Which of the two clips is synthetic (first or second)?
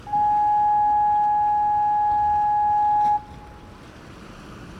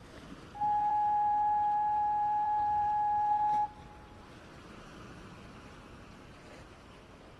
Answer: second